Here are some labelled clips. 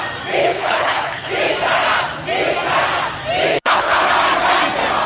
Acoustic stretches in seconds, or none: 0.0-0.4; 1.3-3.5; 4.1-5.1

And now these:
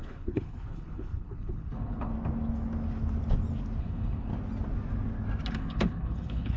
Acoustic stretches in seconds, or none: 2.1-3.8; 4.3-5.5

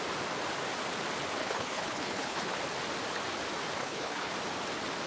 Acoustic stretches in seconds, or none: 0.0-1.4; 2.6-3.8; 4.3-5.1

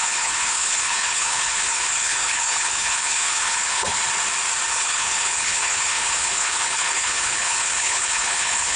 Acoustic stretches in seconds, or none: 4.0-4.7